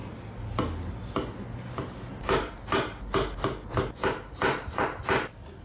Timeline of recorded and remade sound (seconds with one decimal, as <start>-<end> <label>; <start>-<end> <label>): 0.0-5.6 recorded